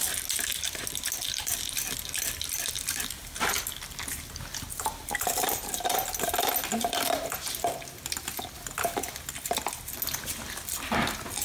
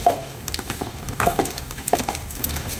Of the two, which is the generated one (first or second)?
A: second